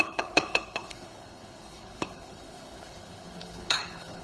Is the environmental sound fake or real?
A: fake